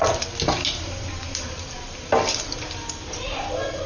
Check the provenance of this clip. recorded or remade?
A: recorded